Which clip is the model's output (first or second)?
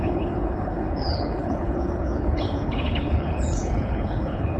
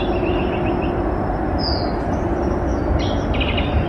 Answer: first